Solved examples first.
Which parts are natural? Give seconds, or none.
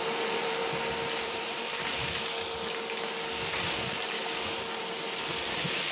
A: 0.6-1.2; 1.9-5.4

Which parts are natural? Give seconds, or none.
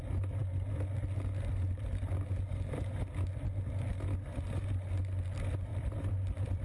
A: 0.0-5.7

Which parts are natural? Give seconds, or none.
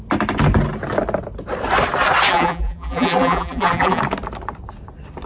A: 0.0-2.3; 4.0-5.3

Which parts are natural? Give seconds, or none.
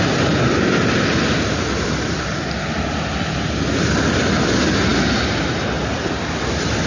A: 0.0-6.9